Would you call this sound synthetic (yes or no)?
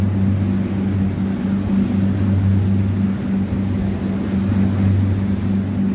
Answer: no